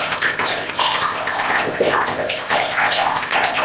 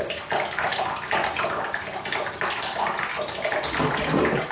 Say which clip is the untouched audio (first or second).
second